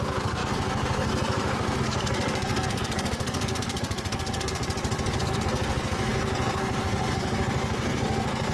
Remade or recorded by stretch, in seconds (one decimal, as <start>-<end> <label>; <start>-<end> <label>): 0.0-4.6 remade; 4.6-5.2 recorded; 5.2-8.5 remade